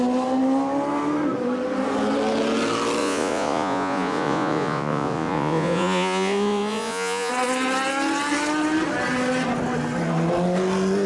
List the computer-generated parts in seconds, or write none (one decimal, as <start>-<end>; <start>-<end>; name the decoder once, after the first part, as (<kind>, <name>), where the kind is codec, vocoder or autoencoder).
3.0-7.3 (vocoder, Vocos)

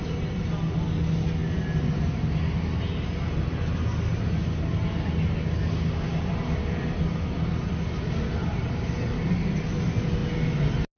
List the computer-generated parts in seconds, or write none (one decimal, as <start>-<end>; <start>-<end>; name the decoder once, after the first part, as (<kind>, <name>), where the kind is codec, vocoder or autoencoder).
none